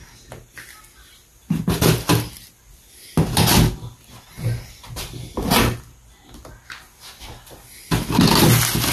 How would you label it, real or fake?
real